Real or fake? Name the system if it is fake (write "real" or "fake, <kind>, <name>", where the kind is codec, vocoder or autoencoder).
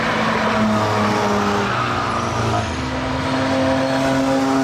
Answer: real